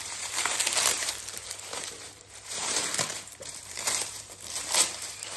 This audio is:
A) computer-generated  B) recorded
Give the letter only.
A